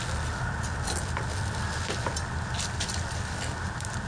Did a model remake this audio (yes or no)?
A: no